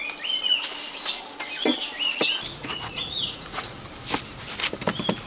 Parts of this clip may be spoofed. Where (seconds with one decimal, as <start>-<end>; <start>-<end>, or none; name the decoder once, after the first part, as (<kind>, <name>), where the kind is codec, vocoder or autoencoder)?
2.5-3.7 (vocoder, Vocos)